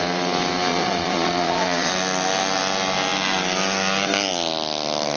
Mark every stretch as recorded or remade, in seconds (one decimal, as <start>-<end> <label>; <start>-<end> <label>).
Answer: 0.0-0.7 recorded; 0.7-1.9 remade; 1.9-5.2 recorded